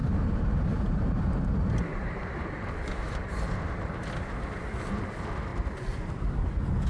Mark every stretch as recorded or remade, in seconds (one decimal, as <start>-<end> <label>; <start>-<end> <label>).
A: 0.0-1.3 remade; 1.3-1.9 recorded; 1.9-4.0 remade; 4.0-5.5 recorded; 5.5-6.3 remade; 6.3-6.9 recorded